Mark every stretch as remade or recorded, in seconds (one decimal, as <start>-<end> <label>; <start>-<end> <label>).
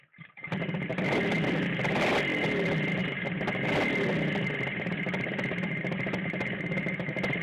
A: 0.0-7.4 recorded